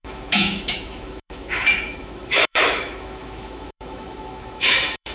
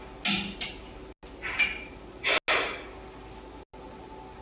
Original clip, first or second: second